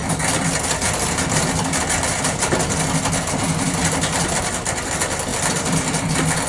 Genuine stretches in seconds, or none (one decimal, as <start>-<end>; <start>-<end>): 0.0-6.5